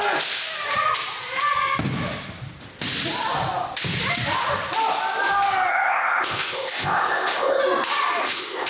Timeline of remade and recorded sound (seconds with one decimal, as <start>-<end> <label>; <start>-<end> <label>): 0.0-5.7 recorded; 5.7-7.6 remade; 7.6-8.2 recorded; 8.2-8.7 remade